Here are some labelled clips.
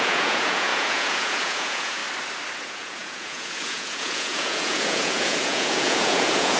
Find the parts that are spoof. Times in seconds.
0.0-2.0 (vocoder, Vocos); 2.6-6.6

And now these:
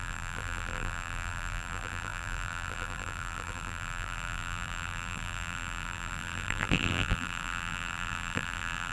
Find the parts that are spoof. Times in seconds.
0.0-8.9 (vocoder, BigVGAN v2)

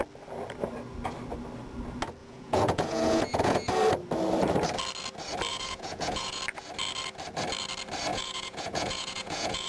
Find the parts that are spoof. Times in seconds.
2.2-3.7 (vocoder, Vocos); 5.5-6.4; 8.1-9.7

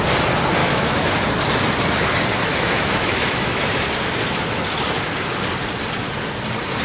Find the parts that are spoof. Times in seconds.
0.6-1.1 (autoencoder, DAC-VAE); 2.5-3.6